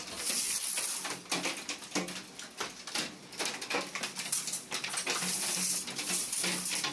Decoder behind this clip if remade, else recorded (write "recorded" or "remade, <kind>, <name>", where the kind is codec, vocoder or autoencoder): recorded